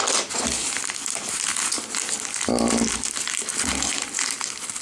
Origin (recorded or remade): recorded